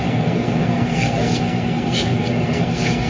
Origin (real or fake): fake